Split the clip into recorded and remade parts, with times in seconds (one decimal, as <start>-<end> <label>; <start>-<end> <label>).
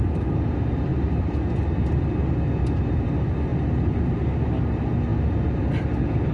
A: 0.0-0.9 recorded; 0.9-2.6 remade; 2.6-3.5 recorded; 3.5-4.2 remade; 4.2-6.3 recorded